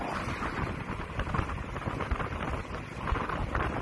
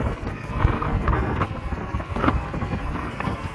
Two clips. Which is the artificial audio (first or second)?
second